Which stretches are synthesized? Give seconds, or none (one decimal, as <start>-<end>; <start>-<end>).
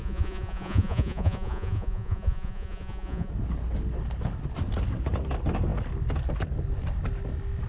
0.0-3.3